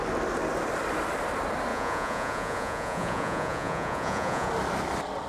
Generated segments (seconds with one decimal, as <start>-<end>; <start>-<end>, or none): 1.7-4.5